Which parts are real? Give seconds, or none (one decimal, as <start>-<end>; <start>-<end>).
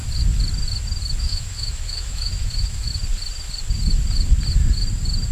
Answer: 0.0-1.2; 2.9-5.3